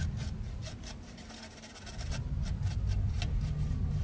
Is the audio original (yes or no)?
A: yes